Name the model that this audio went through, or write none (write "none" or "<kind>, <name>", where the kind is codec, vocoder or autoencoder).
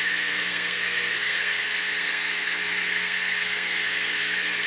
codec, SNAC